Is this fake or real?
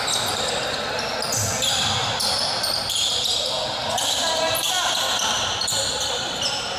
fake